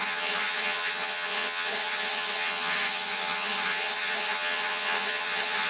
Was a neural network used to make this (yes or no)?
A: yes